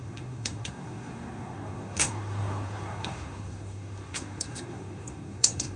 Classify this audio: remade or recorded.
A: remade